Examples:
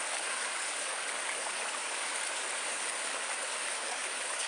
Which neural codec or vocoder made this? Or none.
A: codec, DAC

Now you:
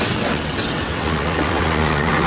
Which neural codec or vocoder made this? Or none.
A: vocoder, WaveNeXt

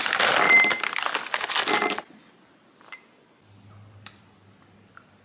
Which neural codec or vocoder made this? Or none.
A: none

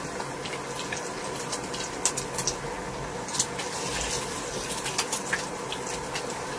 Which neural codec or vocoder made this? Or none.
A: none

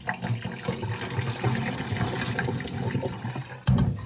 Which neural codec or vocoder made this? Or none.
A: none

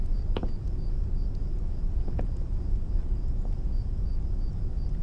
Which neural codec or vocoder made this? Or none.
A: vocoder, Vocos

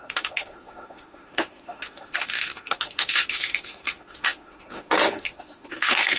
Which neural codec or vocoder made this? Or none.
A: autoencoder, DAC-VAE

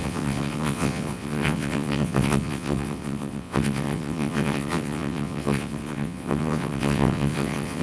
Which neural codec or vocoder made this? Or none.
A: vocoder, WaveNeXt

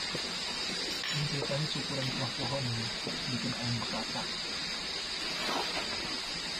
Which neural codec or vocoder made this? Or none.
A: none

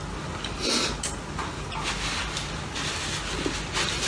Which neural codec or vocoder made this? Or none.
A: none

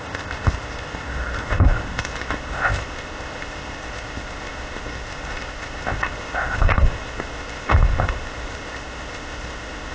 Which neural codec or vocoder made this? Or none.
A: codec, ZipCodec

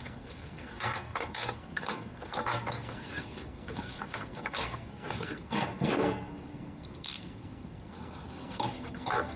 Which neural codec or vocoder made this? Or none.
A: codec, SNAC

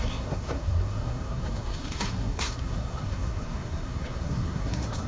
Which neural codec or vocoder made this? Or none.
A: codec, SNAC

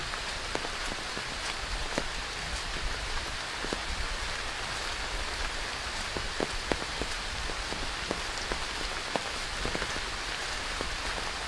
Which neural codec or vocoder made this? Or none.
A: none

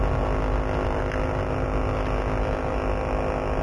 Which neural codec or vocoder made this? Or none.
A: none